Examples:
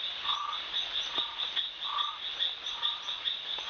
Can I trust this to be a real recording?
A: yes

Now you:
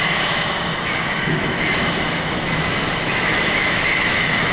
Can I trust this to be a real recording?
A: no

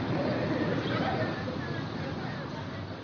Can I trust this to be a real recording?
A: yes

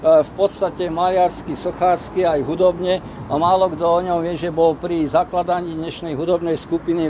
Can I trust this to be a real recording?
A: yes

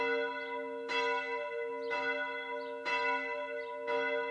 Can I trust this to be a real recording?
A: yes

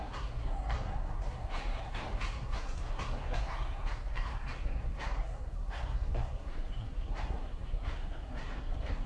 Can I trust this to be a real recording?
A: no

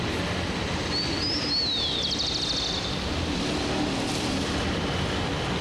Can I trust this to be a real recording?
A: yes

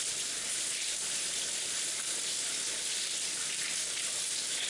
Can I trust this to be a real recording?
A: yes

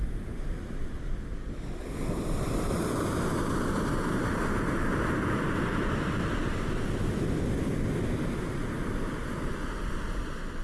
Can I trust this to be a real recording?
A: yes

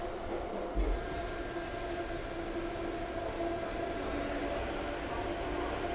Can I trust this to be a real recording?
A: yes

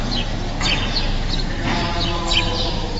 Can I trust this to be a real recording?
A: yes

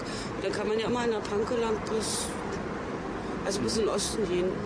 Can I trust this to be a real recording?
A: yes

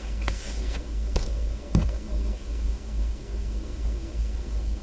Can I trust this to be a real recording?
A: no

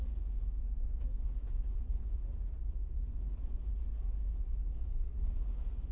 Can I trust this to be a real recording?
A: no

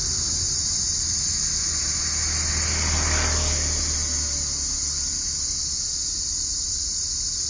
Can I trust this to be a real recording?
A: yes